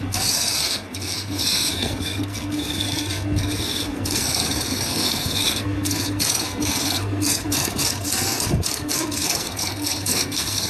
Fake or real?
fake